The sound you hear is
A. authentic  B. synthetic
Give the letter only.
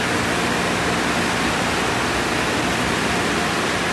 A